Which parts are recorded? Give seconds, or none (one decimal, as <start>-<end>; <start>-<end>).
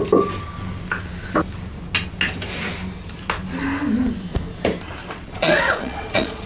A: 0.0-5.0